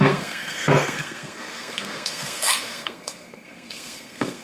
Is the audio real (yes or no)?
no